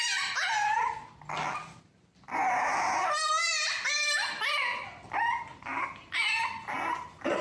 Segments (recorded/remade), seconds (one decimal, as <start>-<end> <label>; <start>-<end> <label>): 0.0-7.4 recorded

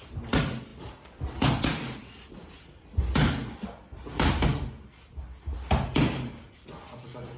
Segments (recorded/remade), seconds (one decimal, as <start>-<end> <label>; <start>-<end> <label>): 0.0-7.4 recorded

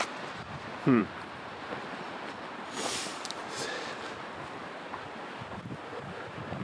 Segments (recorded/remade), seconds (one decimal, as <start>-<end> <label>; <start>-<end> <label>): 0.0-6.6 recorded

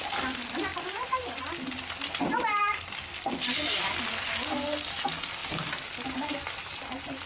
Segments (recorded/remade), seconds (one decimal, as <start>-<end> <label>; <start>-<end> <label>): 0.0-7.3 recorded

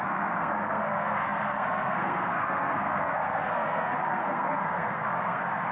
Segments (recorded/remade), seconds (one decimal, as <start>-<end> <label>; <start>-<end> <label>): 0.0-5.7 remade

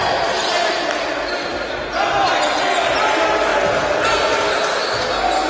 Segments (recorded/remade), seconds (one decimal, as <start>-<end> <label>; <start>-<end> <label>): 0.0-5.5 recorded

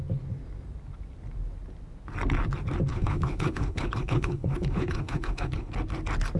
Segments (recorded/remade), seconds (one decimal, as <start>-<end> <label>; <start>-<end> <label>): 0.0-2.9 recorded; 2.9-5.7 remade; 5.7-6.4 recorded